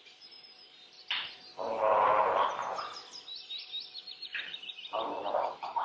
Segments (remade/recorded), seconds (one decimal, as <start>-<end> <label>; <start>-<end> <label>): 0.0-1.0 remade; 1.0-4.0 recorded; 4.0-5.8 remade